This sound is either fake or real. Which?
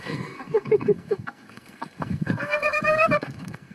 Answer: fake